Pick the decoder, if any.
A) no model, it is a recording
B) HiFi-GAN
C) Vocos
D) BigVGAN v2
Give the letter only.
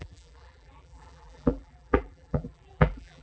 D